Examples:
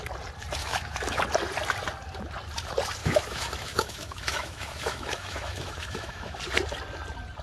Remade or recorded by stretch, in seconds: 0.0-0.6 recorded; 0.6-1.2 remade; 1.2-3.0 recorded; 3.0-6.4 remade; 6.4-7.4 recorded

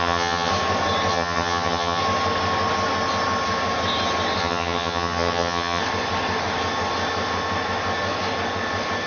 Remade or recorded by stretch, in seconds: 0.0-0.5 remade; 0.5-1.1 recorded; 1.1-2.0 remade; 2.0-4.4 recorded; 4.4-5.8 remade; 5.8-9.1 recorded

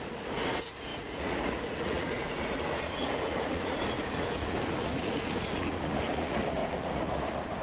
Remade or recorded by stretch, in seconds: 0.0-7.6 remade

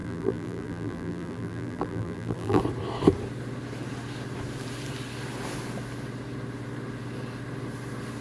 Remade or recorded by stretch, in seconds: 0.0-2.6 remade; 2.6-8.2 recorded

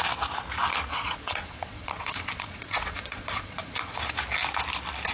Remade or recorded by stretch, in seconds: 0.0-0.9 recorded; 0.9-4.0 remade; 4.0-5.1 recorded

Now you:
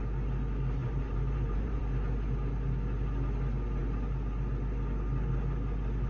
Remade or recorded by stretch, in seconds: 0.0-0.8 recorded; 0.8-1.8 remade; 1.8-6.1 recorded

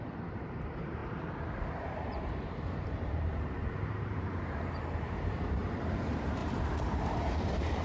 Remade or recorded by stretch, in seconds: 0.0-7.8 remade

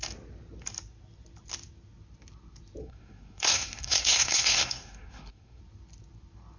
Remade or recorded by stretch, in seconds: 0.0-2.8 recorded; 2.8-5.6 remade; 5.6-6.6 recorded